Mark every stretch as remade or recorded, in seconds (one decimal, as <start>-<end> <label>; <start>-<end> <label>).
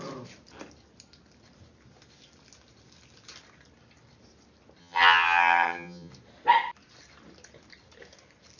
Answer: 0.0-4.8 recorded; 4.8-6.1 remade; 6.1-8.6 recorded